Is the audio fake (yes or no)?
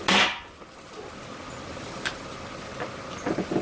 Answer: no